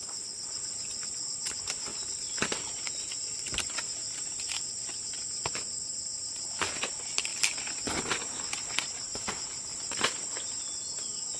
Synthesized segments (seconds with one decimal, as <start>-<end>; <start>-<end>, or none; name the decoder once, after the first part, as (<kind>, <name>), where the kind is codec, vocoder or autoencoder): 1.9-4.3 (vocoder, BigVGAN v2); 9.7-10.3

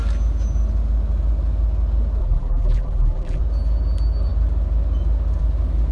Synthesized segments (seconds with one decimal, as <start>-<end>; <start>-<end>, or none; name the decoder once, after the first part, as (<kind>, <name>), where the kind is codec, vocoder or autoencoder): 2.2-3.4 (vocoder, BigVGAN v2)